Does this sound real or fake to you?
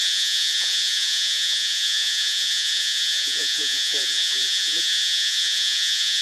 fake